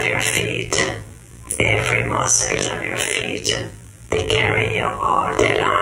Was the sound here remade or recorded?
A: remade